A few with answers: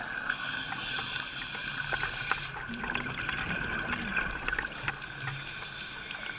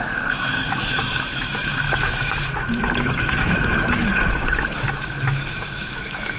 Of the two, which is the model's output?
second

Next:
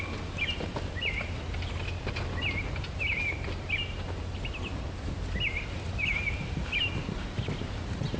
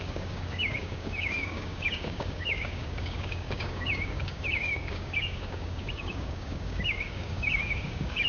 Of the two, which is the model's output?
second